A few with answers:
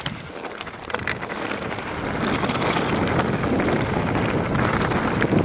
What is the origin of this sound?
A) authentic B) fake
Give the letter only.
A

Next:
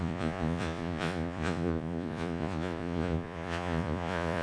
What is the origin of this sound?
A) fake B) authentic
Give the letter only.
A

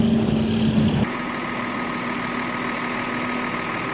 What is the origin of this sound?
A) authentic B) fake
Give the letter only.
A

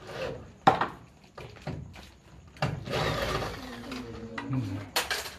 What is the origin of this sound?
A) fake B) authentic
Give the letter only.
B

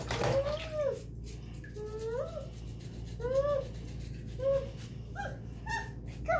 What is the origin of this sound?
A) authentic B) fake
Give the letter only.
A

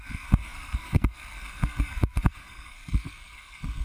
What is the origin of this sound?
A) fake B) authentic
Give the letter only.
A